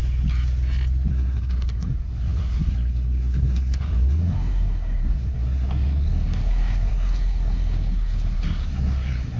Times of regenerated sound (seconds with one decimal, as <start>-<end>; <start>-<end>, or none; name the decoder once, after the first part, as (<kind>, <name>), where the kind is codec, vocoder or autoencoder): 1.1-9.4 (codec, SNAC)